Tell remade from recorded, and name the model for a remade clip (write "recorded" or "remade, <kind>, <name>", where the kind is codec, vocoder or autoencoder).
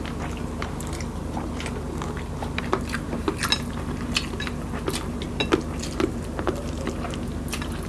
recorded